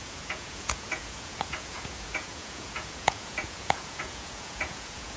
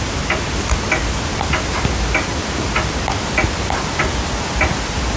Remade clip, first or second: first